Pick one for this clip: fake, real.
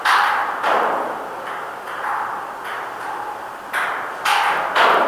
real